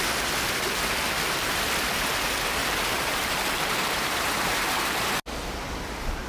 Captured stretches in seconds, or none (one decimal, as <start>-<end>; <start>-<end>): 0.0-2.6; 5.0-6.3